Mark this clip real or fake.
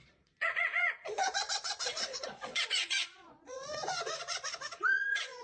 fake